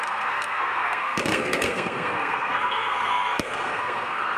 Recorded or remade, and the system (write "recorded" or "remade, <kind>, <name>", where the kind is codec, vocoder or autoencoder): remade, codec, SNAC